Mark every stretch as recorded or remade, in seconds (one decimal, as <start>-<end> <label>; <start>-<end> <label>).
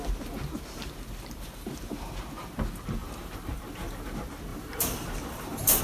0.0-3.0 recorded; 3.0-4.0 remade; 4.0-4.5 recorded; 4.5-5.8 remade